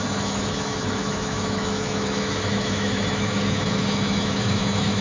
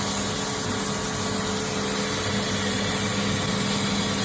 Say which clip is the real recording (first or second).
second